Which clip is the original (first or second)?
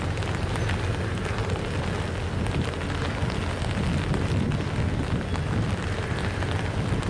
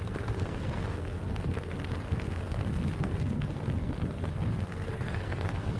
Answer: first